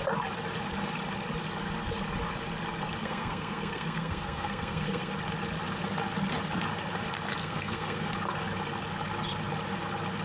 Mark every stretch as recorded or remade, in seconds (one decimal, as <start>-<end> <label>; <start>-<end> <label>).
0.0-3.0 recorded; 3.0-5.1 remade; 5.1-7.4 recorded; 7.4-8.1 remade; 8.1-10.2 recorded